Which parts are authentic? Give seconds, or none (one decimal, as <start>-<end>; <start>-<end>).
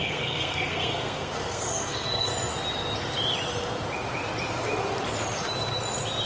2.3-6.3